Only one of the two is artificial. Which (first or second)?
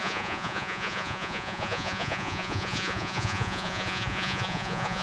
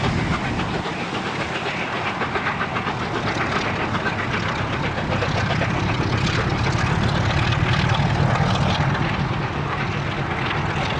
first